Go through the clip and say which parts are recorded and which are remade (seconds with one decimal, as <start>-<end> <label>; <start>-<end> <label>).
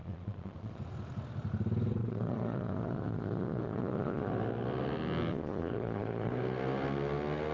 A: 0.0-0.8 remade; 0.8-2.0 recorded; 2.0-4.3 remade; 4.3-5.3 recorded; 5.3-6.3 remade; 6.3-7.5 recorded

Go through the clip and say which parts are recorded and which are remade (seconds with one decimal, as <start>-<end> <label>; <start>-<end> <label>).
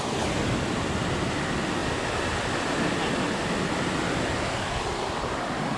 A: 0.0-5.8 recorded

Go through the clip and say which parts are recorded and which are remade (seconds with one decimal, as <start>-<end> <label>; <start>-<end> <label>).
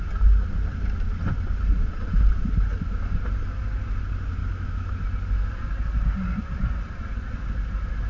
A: 0.0-4.4 recorded; 4.4-4.9 remade; 4.9-8.1 recorded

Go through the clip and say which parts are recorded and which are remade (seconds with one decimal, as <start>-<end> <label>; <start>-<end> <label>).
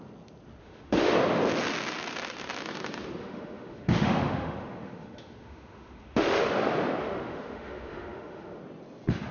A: 0.0-0.6 recorded; 0.6-1.1 remade; 1.1-3.2 recorded; 3.2-6.5 remade; 6.5-7.0 recorded; 7.0-8.6 remade; 8.6-9.3 recorded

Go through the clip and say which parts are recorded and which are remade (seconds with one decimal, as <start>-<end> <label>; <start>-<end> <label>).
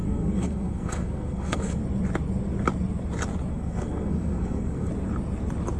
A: 0.0-1.8 remade; 1.8-3.5 recorded; 3.5-4.9 remade; 4.9-5.8 recorded